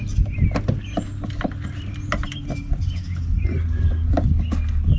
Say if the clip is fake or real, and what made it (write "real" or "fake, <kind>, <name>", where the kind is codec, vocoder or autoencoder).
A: real